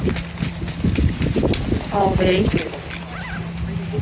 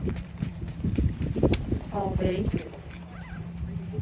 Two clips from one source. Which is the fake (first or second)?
second